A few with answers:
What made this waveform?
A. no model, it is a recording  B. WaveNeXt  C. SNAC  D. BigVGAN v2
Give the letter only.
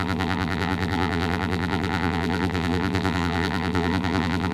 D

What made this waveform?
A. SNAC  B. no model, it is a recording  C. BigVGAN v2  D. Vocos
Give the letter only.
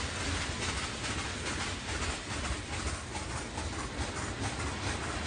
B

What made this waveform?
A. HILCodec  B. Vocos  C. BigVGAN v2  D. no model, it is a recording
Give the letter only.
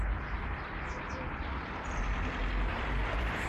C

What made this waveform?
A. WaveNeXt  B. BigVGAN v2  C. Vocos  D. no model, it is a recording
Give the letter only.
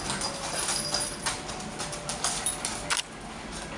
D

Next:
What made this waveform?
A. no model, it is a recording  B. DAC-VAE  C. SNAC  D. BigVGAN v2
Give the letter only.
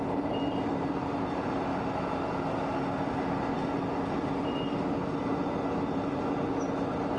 A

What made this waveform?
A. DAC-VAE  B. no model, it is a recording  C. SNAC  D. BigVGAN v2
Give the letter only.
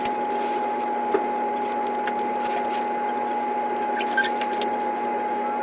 B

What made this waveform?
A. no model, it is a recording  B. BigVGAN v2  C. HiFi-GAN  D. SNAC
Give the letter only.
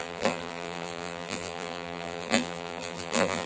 B